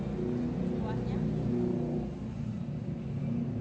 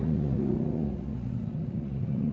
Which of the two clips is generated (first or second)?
second